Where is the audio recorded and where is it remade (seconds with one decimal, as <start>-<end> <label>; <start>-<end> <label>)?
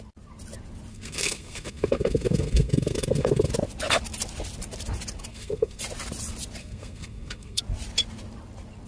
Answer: 0.0-0.9 recorded; 0.9-3.5 remade; 3.5-5.3 recorded; 5.3-5.8 remade; 5.8-6.6 recorded; 6.6-7.6 remade; 7.6-8.9 recorded